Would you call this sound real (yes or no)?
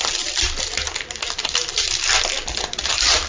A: yes